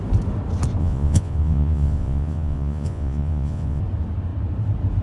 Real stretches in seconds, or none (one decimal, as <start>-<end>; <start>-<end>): 0.0-0.8; 3.8-5.0